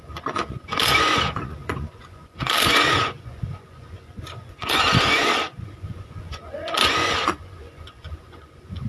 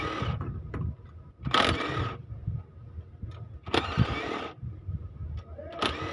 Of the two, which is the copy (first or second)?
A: first